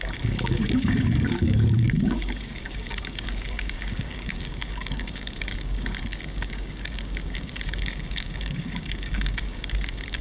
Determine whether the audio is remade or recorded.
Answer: remade